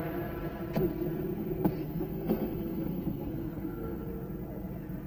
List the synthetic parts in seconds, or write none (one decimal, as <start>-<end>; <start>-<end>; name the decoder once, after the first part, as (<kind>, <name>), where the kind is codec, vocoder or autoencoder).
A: 1.8-4.0 (codec, SNAC)